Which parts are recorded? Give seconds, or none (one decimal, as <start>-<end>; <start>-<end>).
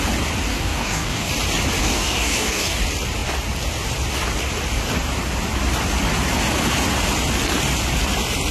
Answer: 0.0-0.5; 1.3-1.8; 2.8-8.5